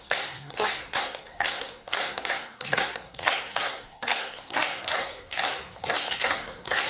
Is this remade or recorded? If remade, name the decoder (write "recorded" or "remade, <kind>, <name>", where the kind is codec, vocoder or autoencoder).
remade, codec, SNAC